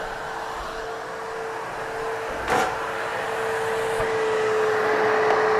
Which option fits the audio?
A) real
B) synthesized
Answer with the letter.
A